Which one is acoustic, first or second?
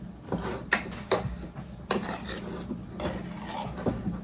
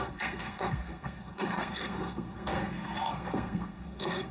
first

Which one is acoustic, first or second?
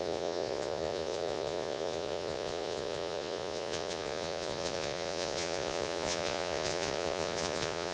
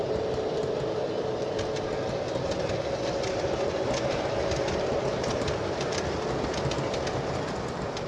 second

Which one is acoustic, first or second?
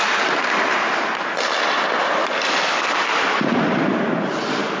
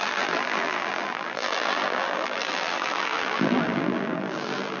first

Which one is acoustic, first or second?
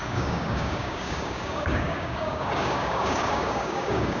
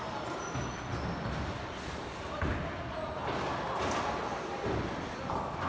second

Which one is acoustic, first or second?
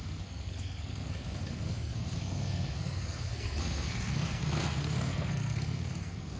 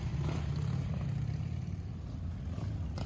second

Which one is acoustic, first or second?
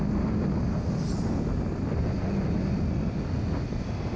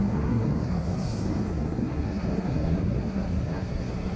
first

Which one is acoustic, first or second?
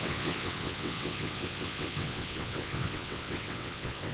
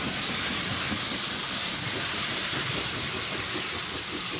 second